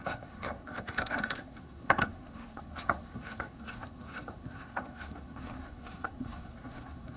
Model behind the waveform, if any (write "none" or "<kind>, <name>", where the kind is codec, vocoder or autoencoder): codec, SNAC